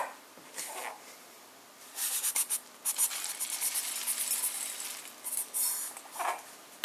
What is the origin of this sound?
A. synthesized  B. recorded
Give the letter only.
B